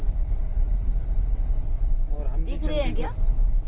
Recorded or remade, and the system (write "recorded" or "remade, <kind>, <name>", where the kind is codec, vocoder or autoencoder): recorded